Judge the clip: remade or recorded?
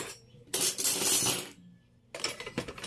recorded